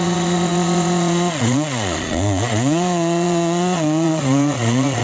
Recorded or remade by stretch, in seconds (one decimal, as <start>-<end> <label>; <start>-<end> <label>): 0.0-5.0 remade